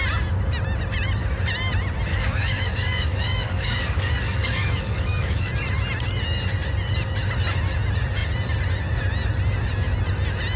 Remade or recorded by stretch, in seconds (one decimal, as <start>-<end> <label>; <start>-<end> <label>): 0.0-2.1 recorded; 2.1-5.5 remade; 5.5-10.6 recorded